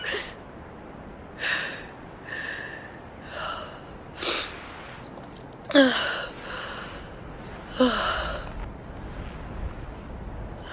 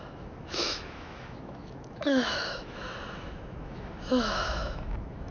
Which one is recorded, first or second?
first